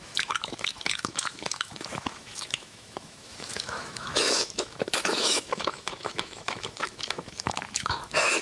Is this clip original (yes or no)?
no